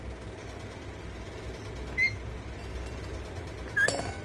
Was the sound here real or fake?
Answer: real